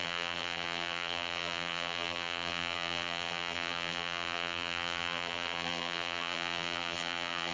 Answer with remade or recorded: remade